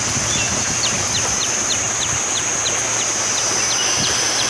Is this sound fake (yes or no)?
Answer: no